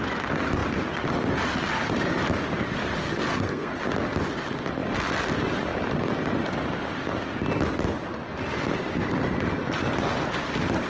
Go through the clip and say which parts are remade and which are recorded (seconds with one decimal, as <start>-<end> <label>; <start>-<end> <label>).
0.0-3.0 recorded; 3.0-3.7 remade; 3.7-10.9 recorded

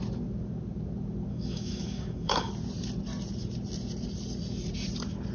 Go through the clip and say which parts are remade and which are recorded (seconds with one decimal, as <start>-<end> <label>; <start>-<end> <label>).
0.0-1.3 recorded; 1.3-2.5 remade; 2.5-5.3 recorded

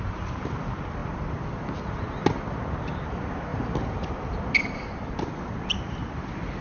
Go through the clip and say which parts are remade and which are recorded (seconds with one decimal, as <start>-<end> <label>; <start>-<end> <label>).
0.0-6.6 recorded

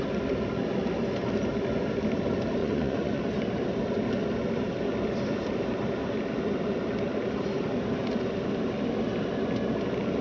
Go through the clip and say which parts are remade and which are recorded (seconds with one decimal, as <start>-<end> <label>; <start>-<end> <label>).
0.0-2.6 recorded; 2.6-3.2 remade; 3.2-10.2 recorded